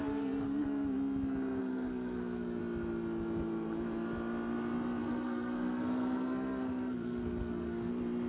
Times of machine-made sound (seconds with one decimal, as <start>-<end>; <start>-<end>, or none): 1.6-2.6; 5.0-7.9